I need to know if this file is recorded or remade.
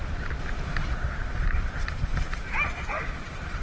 recorded